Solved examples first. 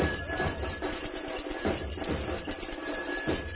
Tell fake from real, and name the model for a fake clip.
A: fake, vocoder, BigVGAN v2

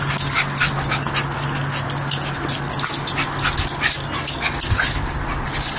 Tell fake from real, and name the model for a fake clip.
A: real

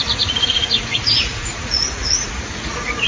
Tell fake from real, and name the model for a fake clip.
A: fake, vocoder, Vocos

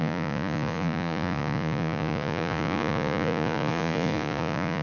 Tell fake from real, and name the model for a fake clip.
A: fake, vocoder, Vocos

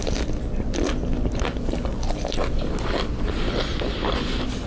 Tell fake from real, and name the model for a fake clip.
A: real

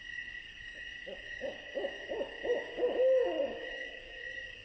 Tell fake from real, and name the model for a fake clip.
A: fake, codec, DAC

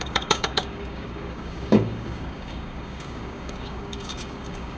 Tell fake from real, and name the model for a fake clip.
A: fake, codec, DAC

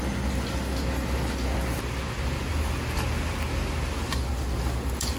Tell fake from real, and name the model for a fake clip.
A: real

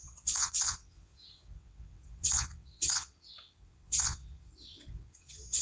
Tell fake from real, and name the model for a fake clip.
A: fake, vocoder, WaveNeXt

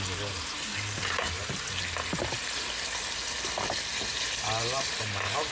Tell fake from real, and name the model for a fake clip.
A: real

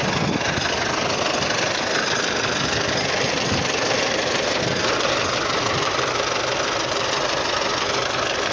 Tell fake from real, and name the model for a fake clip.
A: real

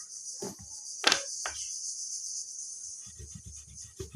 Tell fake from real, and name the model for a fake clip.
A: real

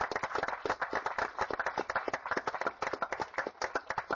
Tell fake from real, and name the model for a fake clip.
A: real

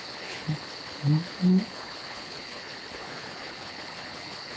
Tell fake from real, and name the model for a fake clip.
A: fake, codec, HILCodec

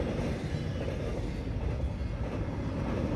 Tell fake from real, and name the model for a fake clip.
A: real